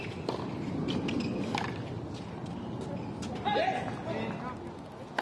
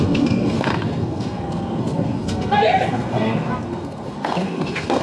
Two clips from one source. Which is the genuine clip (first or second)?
first